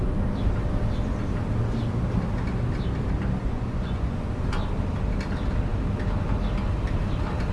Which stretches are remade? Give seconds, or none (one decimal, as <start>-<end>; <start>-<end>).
3.4-4.3